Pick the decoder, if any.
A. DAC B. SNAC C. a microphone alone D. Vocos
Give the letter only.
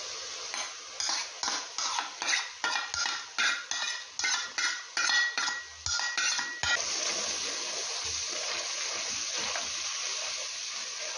C